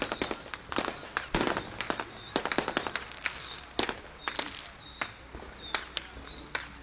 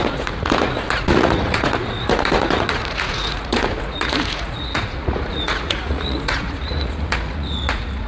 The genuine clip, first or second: first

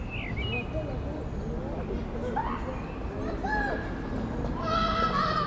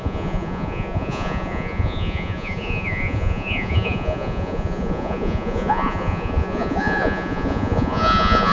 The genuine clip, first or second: first